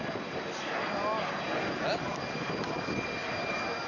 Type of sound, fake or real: real